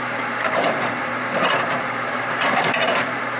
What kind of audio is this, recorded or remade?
remade